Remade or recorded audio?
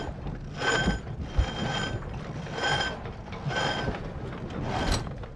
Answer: recorded